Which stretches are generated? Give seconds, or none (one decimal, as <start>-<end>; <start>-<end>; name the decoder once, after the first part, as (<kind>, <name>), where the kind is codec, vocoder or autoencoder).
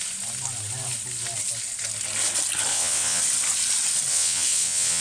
2.7-3.2 (vocoder, WaveNeXt); 4.1-5.0